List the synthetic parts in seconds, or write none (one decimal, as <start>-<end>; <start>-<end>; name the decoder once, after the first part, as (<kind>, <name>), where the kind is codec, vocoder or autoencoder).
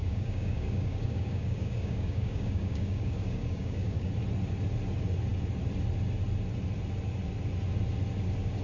0.0-4.1 (codec, DAC)